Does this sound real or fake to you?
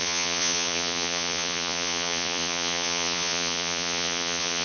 fake